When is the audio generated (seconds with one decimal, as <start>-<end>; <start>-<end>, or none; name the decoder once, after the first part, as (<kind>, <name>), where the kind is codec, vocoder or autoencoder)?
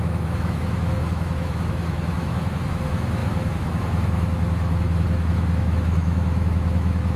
0.0-7.2 (autoencoder, DAC-VAE)